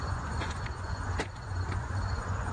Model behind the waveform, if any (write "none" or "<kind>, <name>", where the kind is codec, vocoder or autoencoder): vocoder, Vocos